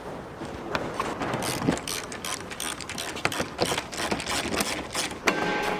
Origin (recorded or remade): recorded